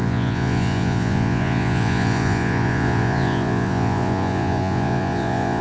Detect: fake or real fake